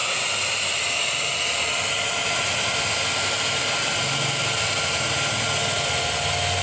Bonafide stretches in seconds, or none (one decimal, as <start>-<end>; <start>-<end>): 0.0-6.6